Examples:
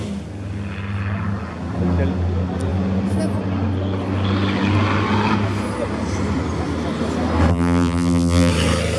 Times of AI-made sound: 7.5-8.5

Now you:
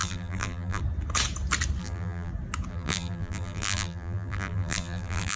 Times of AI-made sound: 0.0-0.8; 1.8-2.3; 2.7-5.4